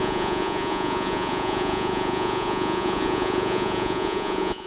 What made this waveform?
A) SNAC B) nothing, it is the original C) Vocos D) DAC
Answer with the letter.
C